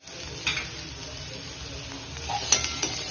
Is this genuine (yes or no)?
yes